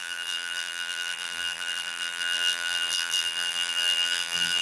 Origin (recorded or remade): remade